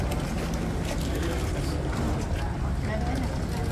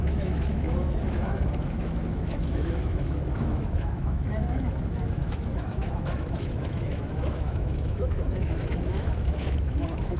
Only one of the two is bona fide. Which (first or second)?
first